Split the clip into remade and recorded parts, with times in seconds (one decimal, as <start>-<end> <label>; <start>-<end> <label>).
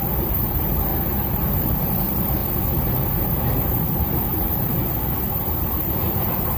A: 0.0-2.4 remade; 2.4-2.9 recorded; 2.9-4.8 remade; 4.8-5.4 recorded; 5.4-6.6 remade